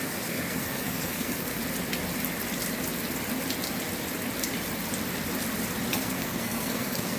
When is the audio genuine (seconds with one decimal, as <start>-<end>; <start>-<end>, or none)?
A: 1.6-5.9